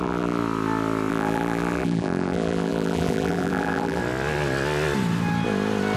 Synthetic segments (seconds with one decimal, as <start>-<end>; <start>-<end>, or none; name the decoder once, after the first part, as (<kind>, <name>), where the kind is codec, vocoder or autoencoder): 0.0-0.4 (vocoder, BigVGAN v2); 1.1-4.0